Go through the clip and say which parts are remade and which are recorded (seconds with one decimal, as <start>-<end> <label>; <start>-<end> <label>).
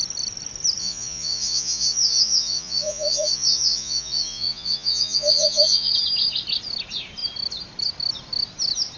0.0-0.8 recorded; 0.8-5.9 remade; 5.9-9.0 recorded